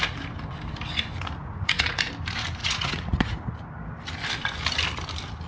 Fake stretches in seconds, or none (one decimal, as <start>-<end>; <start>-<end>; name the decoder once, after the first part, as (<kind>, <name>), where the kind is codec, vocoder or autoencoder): 1.4-2.1 (vocoder, Vocos); 2.6-3.5